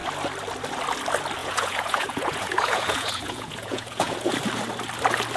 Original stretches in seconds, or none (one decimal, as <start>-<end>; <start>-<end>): 0.0-1.4; 4.3-5.4